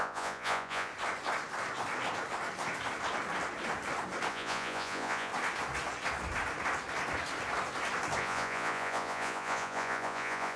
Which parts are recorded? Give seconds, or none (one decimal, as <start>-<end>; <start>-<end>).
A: 0.9-4.3; 5.3-8.2